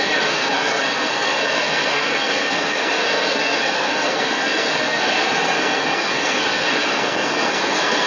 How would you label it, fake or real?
fake